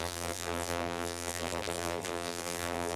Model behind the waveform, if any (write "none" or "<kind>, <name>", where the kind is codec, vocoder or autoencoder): vocoder, BigVGAN v2